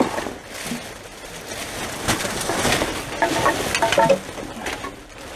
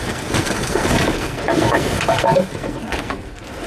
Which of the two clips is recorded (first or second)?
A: first